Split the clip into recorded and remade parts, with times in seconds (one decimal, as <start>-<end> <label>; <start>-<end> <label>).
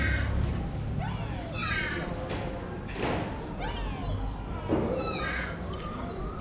0.0-6.4 recorded